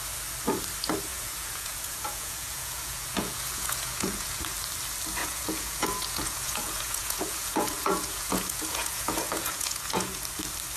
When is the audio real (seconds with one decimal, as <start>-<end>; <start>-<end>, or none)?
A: 0.0-1.1; 4.4-5.2; 10.2-10.8